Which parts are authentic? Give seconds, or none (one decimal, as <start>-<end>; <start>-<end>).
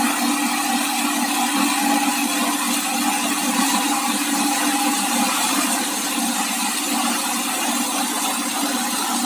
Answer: 0.0-3.4; 6.4-9.3